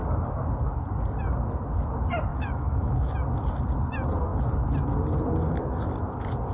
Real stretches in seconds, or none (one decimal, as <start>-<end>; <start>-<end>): 0.0-2.3; 3.1-6.5